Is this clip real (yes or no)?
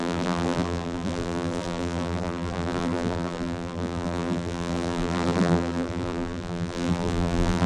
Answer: no